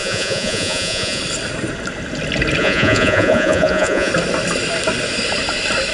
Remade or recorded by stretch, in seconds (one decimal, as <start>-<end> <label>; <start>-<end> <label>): 0.0-1.2 remade; 1.2-2.6 recorded; 2.6-4.1 remade; 4.1-5.9 recorded